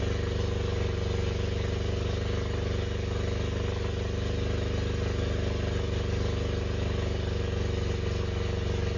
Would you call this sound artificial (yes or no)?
no